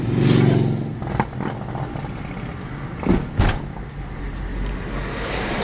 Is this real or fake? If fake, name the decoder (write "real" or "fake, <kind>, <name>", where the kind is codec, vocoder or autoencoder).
real